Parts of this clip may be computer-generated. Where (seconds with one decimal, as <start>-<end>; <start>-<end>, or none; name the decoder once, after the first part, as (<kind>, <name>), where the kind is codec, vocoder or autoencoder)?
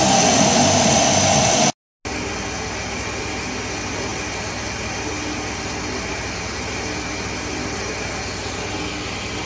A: none